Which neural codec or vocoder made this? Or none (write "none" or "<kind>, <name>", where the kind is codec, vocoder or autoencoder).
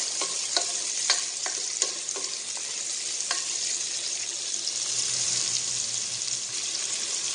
none